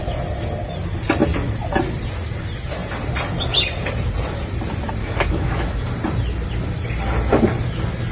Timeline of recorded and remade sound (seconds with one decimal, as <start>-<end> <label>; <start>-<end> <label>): 0.0-5.0 recorded; 5.0-5.8 remade; 5.8-8.1 recorded